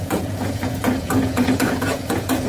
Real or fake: fake